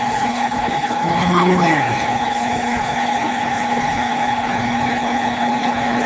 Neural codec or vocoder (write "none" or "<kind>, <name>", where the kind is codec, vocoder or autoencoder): codec, HILCodec